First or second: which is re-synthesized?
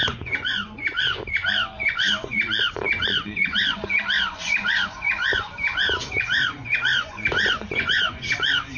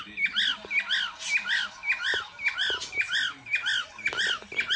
first